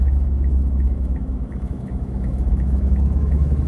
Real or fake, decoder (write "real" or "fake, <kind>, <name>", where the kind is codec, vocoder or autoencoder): fake, autoencoder, DAC-VAE